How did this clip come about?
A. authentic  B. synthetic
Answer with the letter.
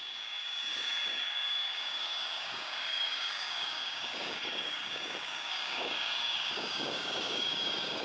B